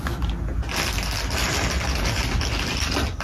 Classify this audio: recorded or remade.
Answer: recorded